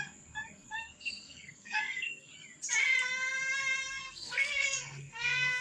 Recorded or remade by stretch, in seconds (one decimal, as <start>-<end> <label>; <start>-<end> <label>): 0.0-2.3 remade; 2.3-3.9 recorded; 3.9-5.6 remade